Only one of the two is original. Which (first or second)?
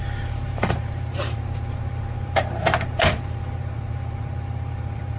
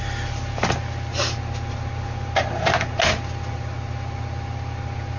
second